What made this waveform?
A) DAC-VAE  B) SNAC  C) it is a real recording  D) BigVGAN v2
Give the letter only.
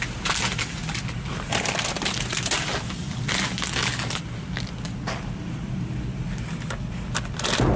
C